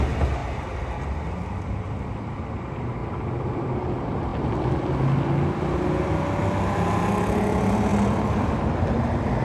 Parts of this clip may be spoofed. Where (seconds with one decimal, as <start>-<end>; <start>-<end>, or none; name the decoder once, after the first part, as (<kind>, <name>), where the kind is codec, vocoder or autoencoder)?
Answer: 3.0-3.9 (vocoder, BigVGAN v2); 7.9-9.4